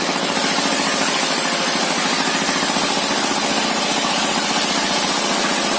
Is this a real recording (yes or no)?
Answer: yes